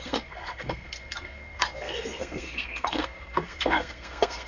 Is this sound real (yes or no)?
no